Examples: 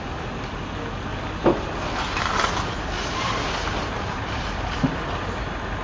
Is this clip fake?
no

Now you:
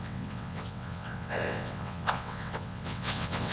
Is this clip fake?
yes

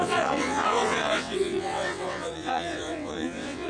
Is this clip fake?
yes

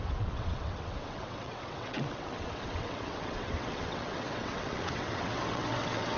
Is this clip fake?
yes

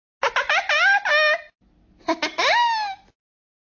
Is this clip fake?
no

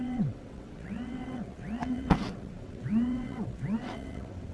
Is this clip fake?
yes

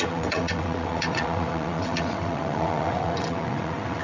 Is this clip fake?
yes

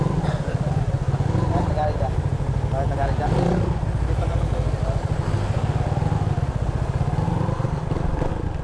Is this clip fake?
no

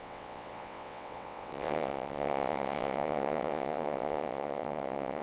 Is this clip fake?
yes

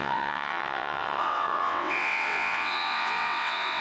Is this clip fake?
yes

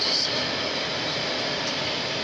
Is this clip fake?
no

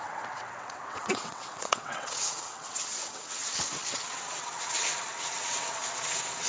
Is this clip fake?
yes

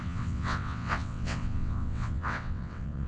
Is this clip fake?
yes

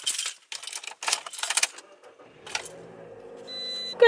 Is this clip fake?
no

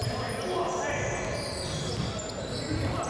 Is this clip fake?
no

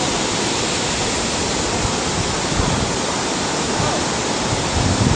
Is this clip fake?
no